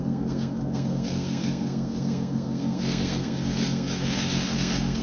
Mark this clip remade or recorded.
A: remade